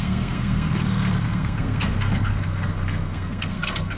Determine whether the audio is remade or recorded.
remade